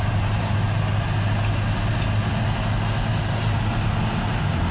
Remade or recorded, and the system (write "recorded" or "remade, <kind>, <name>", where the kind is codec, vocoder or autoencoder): recorded